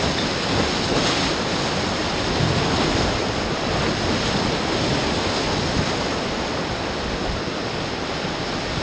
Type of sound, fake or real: real